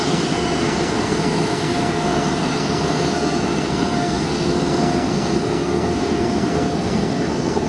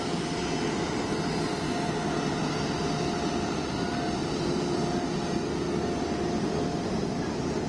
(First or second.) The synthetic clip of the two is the first